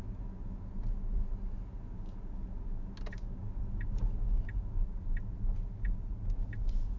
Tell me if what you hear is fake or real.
real